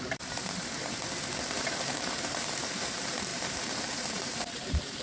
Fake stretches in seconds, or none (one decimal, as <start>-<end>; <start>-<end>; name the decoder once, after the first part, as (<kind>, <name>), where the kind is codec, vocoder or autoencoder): 0.0-5.0 (vocoder, BigVGAN v2)